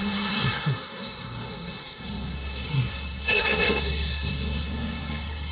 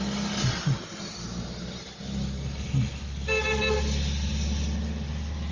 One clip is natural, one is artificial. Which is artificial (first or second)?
first